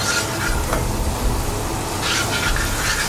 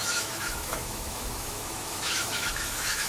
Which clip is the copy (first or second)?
second